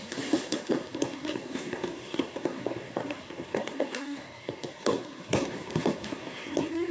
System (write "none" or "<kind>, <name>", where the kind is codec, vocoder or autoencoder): codec, SNAC